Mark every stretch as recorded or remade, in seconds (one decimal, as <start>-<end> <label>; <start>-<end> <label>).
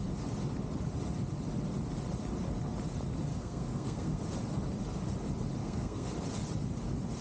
0.0-3.3 recorded; 3.3-4.2 remade; 4.2-5.6 recorded; 5.6-6.1 remade; 6.1-7.2 recorded